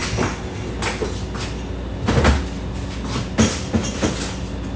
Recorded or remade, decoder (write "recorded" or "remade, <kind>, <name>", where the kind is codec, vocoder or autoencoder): recorded